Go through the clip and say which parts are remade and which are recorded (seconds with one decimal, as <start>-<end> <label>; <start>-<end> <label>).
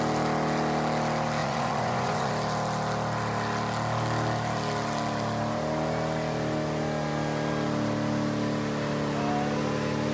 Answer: 0.0-1.4 recorded; 1.4-2.3 remade; 2.3-10.1 recorded